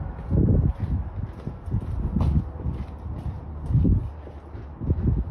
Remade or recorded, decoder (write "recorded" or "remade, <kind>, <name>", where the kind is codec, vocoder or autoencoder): recorded